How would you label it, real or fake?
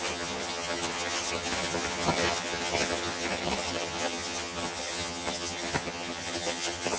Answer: fake